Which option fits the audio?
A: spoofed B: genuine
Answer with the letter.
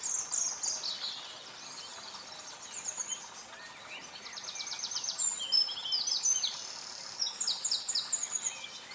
B